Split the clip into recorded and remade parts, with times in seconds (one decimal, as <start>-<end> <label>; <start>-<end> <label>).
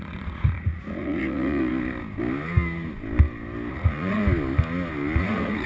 0.0-1.7 remade; 1.7-3.7 recorded; 3.7-4.2 remade; 4.2-5.2 recorded; 5.2-5.7 remade